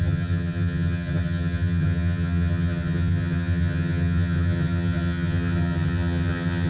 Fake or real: fake